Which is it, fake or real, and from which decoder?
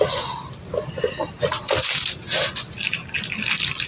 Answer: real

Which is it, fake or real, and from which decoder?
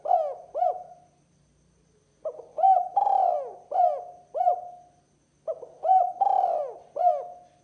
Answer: real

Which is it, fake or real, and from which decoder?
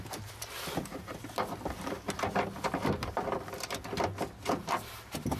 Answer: real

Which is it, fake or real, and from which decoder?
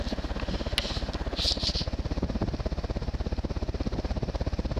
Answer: real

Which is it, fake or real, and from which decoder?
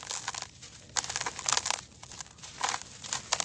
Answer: real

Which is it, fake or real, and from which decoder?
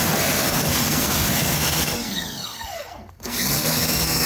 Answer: fake, codec, SNAC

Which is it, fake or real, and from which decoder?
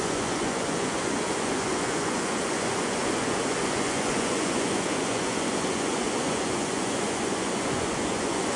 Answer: fake, vocoder, Vocos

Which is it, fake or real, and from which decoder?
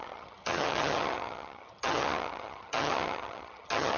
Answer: fake, vocoder, HiFi-GAN